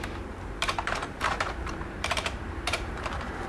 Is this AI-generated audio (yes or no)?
yes